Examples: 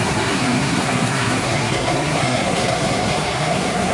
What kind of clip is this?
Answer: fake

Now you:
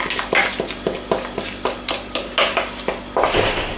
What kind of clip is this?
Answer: real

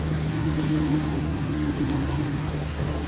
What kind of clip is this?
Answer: fake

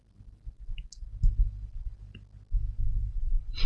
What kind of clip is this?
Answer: real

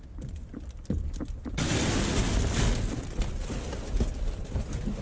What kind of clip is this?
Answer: real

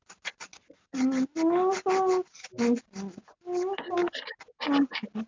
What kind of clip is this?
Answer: real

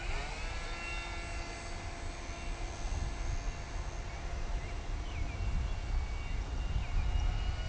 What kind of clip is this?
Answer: real